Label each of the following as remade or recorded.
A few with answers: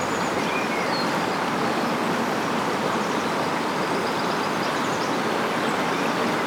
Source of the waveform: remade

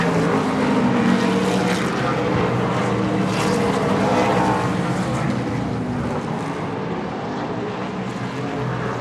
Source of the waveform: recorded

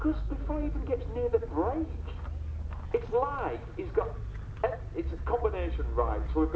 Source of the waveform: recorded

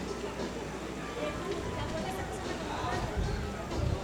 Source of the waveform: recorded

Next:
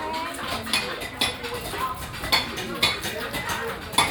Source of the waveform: recorded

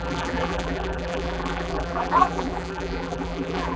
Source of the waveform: remade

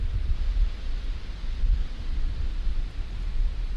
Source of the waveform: recorded